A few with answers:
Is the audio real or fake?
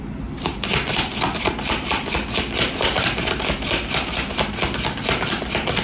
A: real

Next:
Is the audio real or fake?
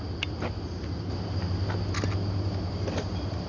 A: real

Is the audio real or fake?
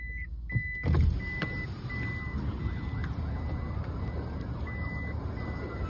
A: real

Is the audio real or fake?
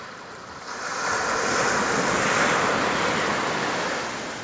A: real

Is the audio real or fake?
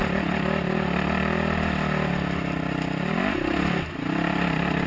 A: real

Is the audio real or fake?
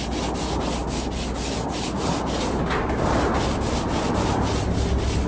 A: real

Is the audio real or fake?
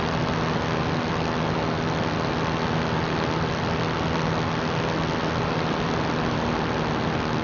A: real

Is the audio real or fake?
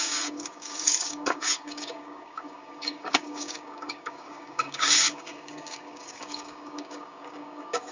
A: fake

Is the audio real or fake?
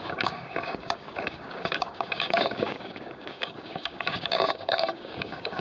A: fake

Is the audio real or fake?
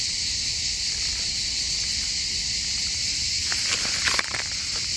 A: real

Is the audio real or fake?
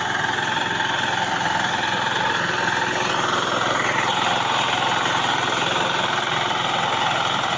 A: real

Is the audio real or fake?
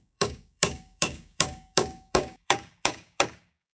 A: fake